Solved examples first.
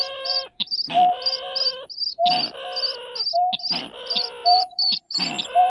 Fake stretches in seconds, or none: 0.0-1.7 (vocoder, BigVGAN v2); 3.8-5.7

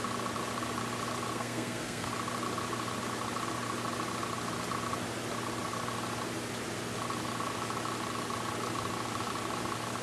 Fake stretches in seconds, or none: 1.3-2.1 (codec, SNAC)

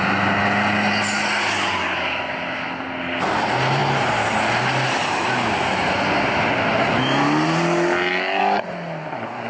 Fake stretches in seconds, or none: none

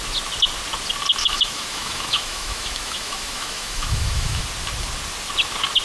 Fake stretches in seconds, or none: 1.2-4.4 (autoencoder, DAC-VAE)

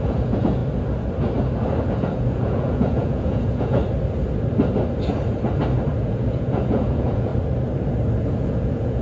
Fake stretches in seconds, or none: 0.0-0.6 (vocoder, Vocos); 1.8-3.8; 6.1-7.3; 8.2-9.0

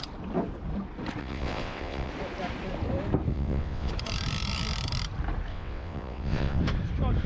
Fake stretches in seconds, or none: 1.2-2.1 (vocoder, WaveNeXt); 3.3-3.9; 5.5-6.6